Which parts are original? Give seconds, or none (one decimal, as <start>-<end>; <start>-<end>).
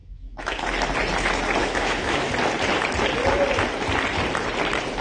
0.6-1.6; 2.3-5.0